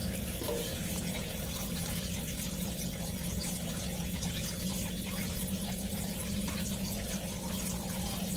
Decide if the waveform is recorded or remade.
recorded